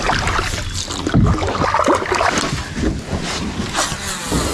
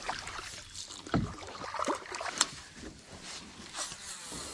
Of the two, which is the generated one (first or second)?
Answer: second